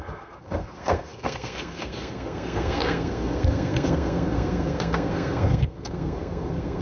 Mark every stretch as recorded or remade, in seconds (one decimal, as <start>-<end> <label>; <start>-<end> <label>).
0.0-6.8 remade

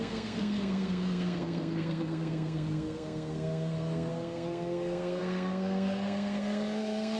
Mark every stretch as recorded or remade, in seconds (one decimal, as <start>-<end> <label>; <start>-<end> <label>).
0.0-7.2 remade

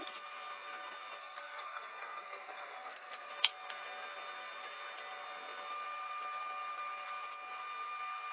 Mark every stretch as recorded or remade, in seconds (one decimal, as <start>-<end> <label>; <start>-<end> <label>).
0.0-1.2 recorded; 1.2-3.3 remade; 3.3-8.3 recorded